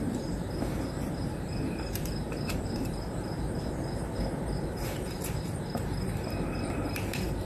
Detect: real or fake fake